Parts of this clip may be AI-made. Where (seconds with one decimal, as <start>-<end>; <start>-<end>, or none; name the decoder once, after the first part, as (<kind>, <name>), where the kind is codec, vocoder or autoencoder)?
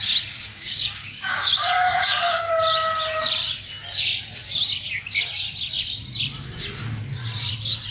0.5-2.5 (codec, DAC)